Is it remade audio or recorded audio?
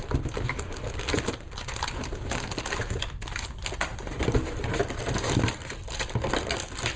recorded